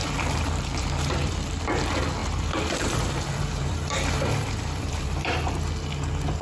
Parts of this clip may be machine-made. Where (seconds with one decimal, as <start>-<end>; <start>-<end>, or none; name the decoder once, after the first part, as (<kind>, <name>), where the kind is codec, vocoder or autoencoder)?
0.0-1.6 (vocoder, BigVGAN v2); 2.2-5.6